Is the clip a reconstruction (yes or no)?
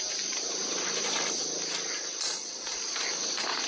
no